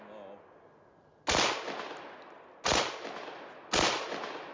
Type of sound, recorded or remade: recorded